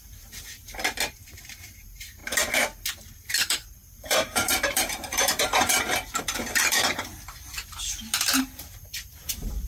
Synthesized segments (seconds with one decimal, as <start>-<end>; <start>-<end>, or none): 0.0-0.6; 1.3-2.2; 3.0-7.1; 8.4-9.7